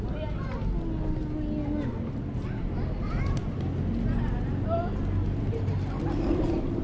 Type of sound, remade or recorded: recorded